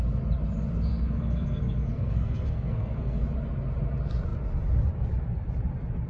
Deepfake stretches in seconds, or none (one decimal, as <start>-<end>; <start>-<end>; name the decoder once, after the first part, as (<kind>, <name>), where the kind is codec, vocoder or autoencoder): 0.9-3.2 (codec, SNAC)